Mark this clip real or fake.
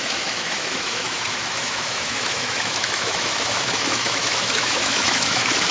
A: fake